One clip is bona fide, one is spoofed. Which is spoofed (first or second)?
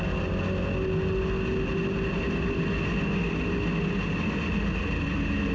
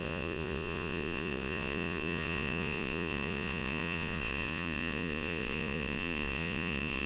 second